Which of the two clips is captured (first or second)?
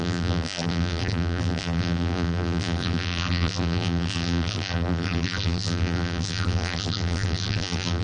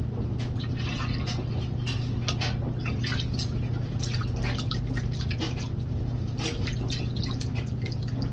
second